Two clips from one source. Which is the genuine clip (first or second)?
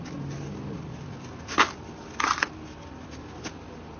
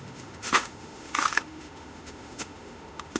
first